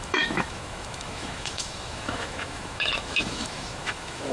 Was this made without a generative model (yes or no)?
no